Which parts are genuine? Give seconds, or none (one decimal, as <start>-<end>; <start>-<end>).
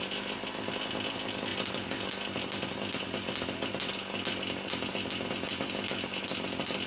0.0-6.9